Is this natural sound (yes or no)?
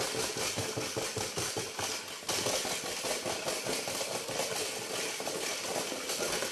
yes